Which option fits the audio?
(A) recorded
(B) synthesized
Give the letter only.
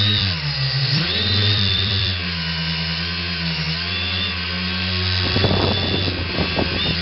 B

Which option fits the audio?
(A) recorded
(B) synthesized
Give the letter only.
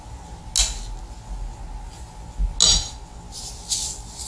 A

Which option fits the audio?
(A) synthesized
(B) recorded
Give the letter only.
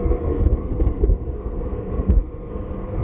A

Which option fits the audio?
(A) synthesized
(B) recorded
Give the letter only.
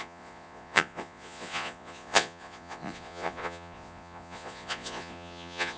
A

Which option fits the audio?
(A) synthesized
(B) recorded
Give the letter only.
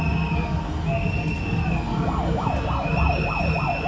B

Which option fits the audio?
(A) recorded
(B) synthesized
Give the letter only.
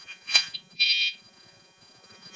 B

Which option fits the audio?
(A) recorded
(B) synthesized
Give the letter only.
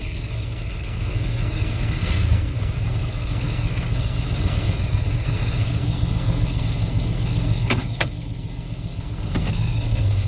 B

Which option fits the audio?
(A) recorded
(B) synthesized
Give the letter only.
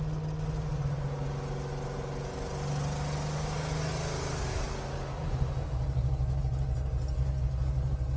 A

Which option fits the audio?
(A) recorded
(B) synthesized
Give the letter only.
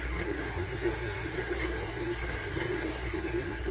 B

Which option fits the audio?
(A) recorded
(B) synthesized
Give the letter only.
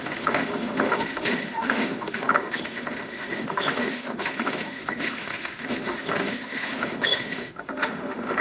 B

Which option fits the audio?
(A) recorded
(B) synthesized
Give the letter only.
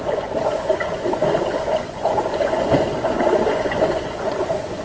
B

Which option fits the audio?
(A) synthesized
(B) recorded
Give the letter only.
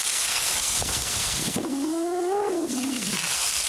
A